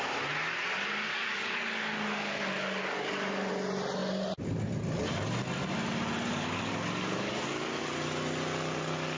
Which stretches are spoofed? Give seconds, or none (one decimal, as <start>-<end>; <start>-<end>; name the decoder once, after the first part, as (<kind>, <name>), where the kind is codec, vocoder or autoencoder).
1.1-3.5 (codec, DAC); 6.3-7.8